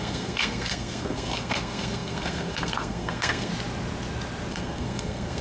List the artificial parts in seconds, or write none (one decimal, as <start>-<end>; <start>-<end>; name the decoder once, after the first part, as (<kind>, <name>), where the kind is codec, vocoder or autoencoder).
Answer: 0.0-3.5 (codec, SNAC); 4.5-5.4